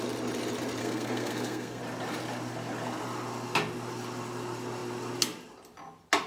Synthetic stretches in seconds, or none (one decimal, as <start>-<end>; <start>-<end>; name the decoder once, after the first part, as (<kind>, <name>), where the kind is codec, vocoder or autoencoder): 0.8-1.8 (codec, SNAC)